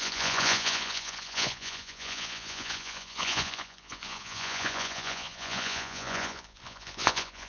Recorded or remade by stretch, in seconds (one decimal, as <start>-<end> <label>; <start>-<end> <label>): 0.0-7.5 remade